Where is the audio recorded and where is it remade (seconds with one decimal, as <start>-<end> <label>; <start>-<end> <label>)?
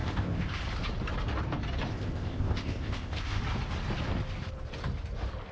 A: 0.0-0.6 remade; 0.6-1.9 recorded; 1.9-3.4 remade; 3.4-5.5 recorded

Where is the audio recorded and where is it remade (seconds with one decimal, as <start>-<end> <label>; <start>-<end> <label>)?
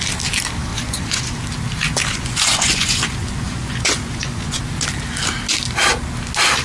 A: 0.0-0.7 recorded; 0.7-1.2 remade; 1.2-2.1 recorded; 2.1-4.6 remade; 4.6-6.6 recorded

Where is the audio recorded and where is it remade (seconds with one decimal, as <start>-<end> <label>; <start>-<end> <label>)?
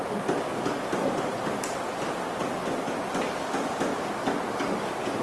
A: 0.0-5.2 recorded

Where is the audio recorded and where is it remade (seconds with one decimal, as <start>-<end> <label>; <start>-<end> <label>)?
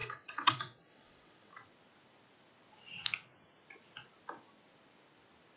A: 0.0-1.5 remade; 1.5-5.6 recorded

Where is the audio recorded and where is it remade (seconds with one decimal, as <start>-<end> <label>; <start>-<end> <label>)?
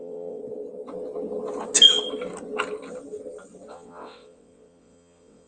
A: 0.0-0.4 remade; 0.4-3.7 recorded; 3.7-5.5 remade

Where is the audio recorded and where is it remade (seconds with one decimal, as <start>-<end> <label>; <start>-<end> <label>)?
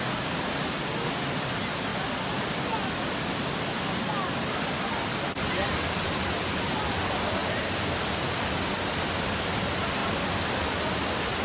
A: 0.0-11.4 recorded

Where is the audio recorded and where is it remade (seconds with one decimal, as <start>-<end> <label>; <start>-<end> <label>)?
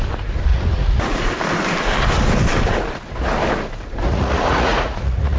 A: 0.0-0.5 recorded; 0.5-1.3 remade; 1.3-4.1 recorded; 4.1-5.4 remade